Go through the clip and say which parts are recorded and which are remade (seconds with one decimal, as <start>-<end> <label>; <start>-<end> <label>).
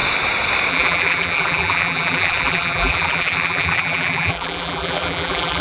0.0-0.7 recorded; 0.7-5.6 remade